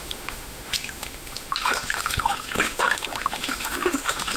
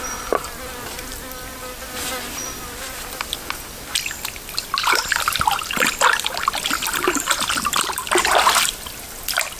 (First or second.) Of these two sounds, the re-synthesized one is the first